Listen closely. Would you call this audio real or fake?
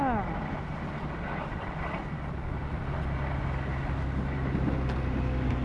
real